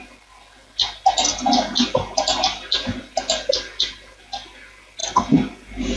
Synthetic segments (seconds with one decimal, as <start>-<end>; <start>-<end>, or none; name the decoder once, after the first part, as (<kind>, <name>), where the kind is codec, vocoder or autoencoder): none